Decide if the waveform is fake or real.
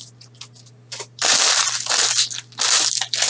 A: real